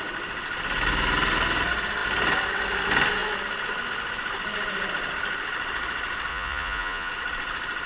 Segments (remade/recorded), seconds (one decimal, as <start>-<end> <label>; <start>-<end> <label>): 0.0-6.3 recorded; 6.3-7.1 remade; 7.1-7.9 recorded